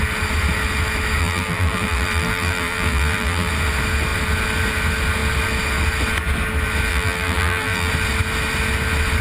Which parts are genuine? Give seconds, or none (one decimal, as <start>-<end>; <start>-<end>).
0.0-1.2; 3.5-6.9; 7.9-9.2